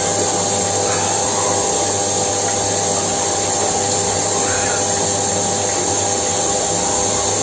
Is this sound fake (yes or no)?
no